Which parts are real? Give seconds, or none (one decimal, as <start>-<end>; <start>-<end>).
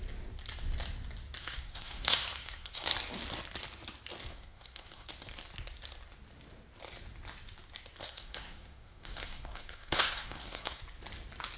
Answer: 0.0-1.4; 2.9-4.3; 5.1-8.0; 10.8-11.6